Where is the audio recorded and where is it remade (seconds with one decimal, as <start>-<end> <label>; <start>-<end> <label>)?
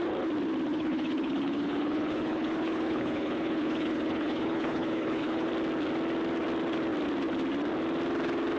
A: 0.0-0.7 recorded; 0.7-5.5 remade; 5.5-8.6 recorded